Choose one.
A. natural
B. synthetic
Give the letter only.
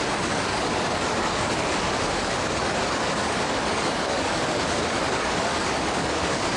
B